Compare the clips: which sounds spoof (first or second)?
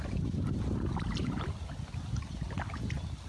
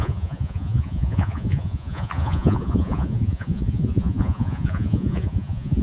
second